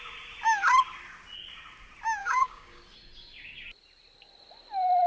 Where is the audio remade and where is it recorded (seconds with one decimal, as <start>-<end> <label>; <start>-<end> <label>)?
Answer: 0.0-2.2 recorded; 2.2-2.8 remade; 2.8-5.1 recorded